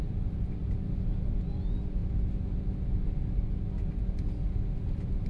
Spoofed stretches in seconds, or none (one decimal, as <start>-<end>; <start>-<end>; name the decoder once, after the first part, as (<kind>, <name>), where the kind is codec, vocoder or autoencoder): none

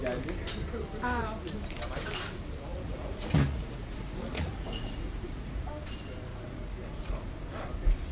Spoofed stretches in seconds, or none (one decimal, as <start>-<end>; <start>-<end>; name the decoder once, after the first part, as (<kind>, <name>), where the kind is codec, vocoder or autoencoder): 2.7-5.7 (vocoder, Vocos); 6.3-7.3

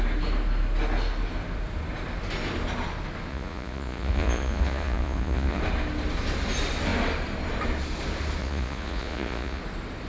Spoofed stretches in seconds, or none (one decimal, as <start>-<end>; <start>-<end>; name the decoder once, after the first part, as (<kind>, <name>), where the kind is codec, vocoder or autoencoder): 3.3-5.6 (vocoder, Vocos); 8.4-9.6

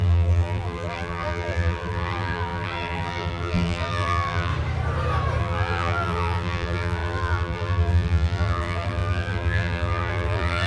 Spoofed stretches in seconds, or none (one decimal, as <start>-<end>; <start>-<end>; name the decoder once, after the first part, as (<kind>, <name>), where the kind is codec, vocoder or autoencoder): 0.0-4.5 (vocoder, BigVGAN v2); 5.4-10.7

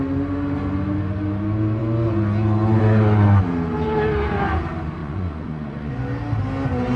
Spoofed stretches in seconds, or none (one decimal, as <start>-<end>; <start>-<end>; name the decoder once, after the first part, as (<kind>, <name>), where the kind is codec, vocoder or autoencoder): 5.0-5.9 (vocoder, Vocos)

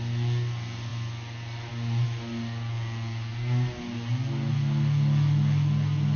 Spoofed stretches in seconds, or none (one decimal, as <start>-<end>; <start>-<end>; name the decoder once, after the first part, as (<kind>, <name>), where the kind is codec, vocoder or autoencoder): none

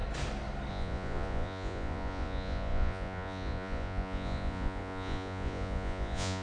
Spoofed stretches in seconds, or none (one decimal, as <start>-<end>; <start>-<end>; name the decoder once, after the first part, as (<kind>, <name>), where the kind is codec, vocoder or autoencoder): 0.7-6.4 (vocoder, Vocos)

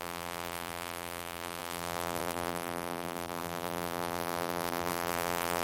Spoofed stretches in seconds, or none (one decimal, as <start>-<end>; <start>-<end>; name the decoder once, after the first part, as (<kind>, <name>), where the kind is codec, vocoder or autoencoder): 0.0-5.6 (vocoder, BigVGAN v2)